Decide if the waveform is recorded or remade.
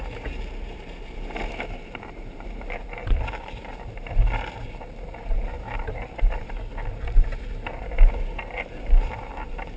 remade